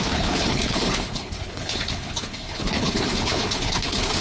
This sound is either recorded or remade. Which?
remade